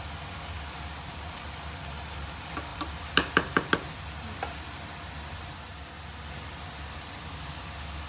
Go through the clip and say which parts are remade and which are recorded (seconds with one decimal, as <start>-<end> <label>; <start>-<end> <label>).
0.0-8.1 recorded